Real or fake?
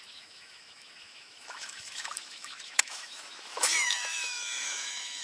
fake